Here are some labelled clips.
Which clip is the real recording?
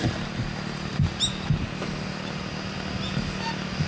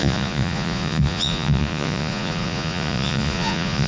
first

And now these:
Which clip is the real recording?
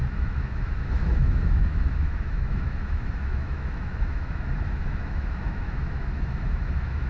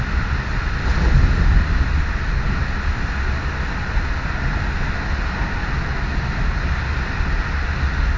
second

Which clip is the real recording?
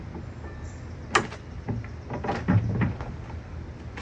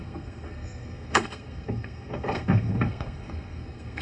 first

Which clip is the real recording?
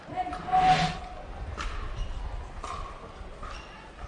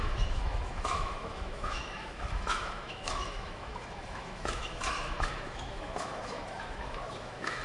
first